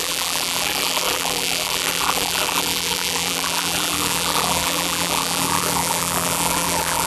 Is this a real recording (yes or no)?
no